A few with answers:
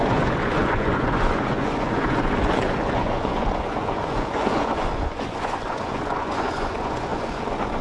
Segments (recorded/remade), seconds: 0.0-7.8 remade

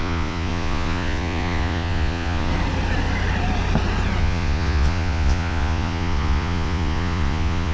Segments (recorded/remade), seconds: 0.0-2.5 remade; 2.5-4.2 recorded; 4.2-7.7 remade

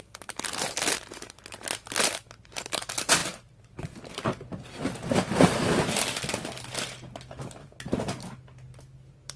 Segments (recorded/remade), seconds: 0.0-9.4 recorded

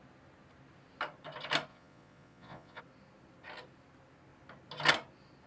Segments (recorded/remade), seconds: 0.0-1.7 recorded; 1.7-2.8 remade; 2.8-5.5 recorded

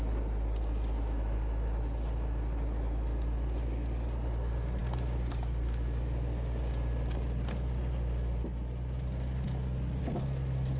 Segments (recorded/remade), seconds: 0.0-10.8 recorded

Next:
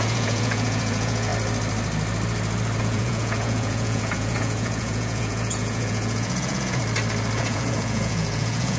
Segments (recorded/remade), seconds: 0.0-1.3 remade; 1.3-2.8 recorded; 2.8-6.8 remade; 6.8-7.4 recorded; 7.4-8.8 remade

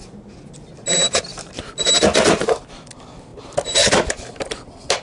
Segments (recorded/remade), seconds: 0.0-5.0 recorded

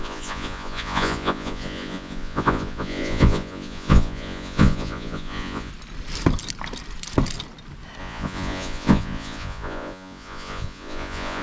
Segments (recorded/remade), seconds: 0.0-5.7 remade; 5.7-8.0 recorded; 8.0-11.4 remade